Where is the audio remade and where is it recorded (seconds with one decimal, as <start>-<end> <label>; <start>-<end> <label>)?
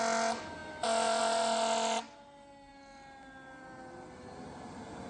0.0-5.1 recorded